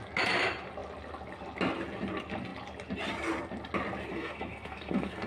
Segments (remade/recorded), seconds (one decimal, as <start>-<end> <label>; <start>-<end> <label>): 0.0-4.1 recorded; 4.1-5.3 remade